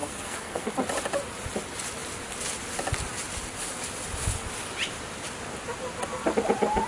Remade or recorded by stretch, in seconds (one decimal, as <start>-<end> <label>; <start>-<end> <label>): 0.0-0.7 remade; 0.7-6.9 recorded